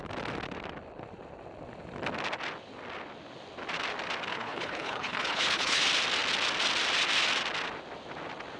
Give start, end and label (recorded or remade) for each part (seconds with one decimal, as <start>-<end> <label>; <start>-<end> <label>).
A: 0.0-4.3 recorded; 4.3-5.8 remade; 5.8-8.6 recorded